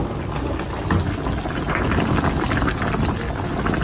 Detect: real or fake real